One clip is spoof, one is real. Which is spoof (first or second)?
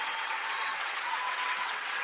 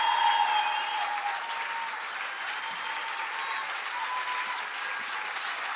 first